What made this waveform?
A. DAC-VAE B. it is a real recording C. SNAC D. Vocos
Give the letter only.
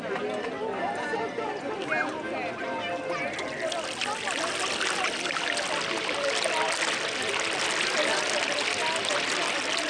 B